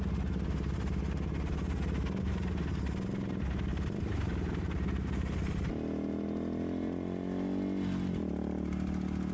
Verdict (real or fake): real